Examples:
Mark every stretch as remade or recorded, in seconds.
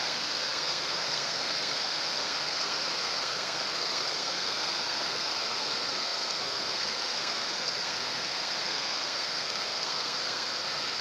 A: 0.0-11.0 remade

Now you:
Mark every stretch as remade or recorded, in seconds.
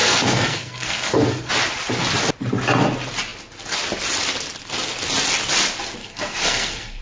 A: 0.0-1.5 remade; 1.5-6.0 recorded; 6.0-7.0 remade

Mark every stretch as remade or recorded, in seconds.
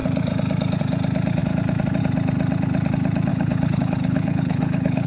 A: 0.0-3.3 recorded; 3.3-5.1 remade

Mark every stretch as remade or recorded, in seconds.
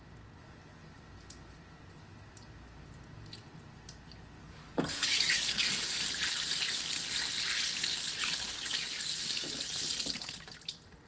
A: 0.0-4.4 recorded; 4.4-5.7 remade; 5.7-8.2 recorded; 8.2-9.1 remade; 9.1-11.1 recorded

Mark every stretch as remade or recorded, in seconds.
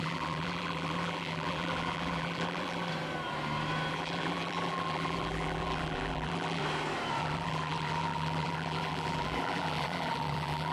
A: 0.0-2.9 remade; 2.9-3.9 recorded; 3.9-6.6 remade; 6.6-7.2 recorded; 7.2-10.7 remade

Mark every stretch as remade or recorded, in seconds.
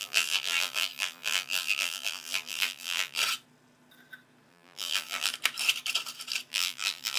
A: 0.0-3.2 remade; 3.2-4.5 recorded; 4.5-5.3 remade; 5.3-6.5 recorded; 6.5-7.2 remade